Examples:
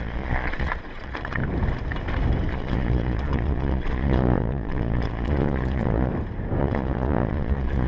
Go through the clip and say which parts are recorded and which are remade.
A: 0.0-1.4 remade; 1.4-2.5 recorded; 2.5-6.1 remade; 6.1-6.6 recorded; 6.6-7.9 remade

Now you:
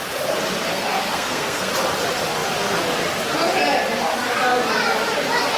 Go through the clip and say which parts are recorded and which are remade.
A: 0.0-0.7 recorded; 0.7-1.7 remade; 1.7-5.6 recorded

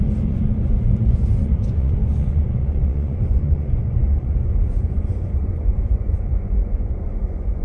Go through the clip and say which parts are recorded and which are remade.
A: 0.0-7.6 remade

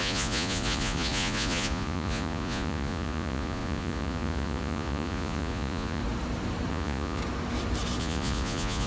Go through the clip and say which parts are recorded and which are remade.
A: 0.0-6.0 remade; 6.0-6.7 recorded; 6.7-7.2 remade; 7.2-8.0 recorded; 8.0-8.9 remade

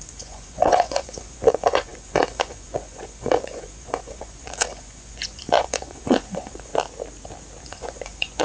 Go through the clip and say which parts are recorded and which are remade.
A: 0.0-6.7 remade; 6.7-7.6 recorded; 7.6-8.4 remade

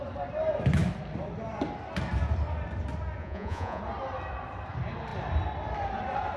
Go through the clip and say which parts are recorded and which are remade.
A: 0.0-3.2 recorded; 3.2-3.8 remade; 3.8-6.4 recorded